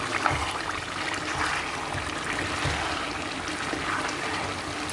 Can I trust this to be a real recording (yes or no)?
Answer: yes